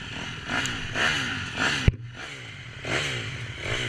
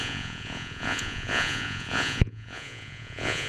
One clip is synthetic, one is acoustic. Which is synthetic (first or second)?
second